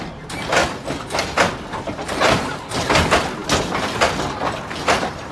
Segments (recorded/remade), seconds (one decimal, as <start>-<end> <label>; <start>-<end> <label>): 0.0-5.3 recorded